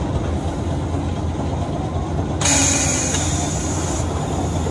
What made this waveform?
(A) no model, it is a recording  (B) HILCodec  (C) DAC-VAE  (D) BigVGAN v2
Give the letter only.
A